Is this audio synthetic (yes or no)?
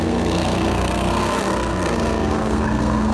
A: yes